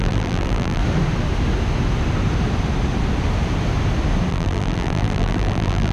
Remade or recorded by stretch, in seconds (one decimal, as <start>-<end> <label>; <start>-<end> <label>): 0.0-0.8 remade; 0.8-4.3 recorded; 4.3-5.9 remade